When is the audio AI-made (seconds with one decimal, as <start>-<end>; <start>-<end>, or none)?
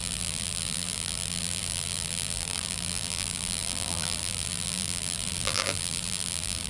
0.0-6.7